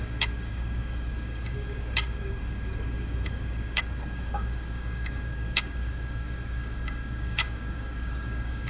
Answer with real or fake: fake